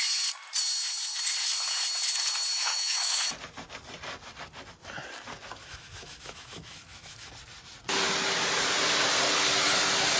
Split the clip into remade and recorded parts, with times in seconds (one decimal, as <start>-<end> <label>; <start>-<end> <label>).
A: 0.0-2.5 recorded; 2.5-3.4 remade; 3.4-5.6 recorded; 5.6-7.3 remade; 7.3-10.2 recorded